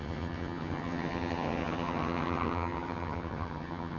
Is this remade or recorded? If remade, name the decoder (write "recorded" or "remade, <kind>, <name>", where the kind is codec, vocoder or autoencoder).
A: remade, vocoder, HiFi-GAN